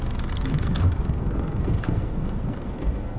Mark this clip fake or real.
fake